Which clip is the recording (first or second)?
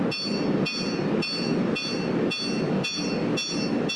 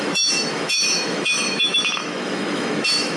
first